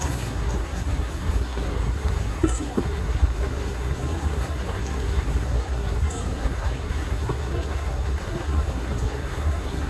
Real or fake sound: fake